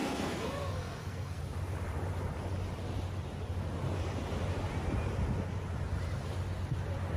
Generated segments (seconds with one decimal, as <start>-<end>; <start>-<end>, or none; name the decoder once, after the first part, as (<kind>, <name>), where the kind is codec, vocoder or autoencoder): 0.0-1.4 (codec, SNAC)